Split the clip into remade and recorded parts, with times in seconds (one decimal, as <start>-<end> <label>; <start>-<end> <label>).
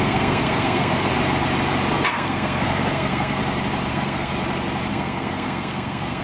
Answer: 0.0-1.1 remade; 1.1-2.1 recorded; 2.1-3.4 remade; 3.4-3.9 recorded; 3.9-4.3 remade; 4.3-4.9 recorded; 4.9-6.2 remade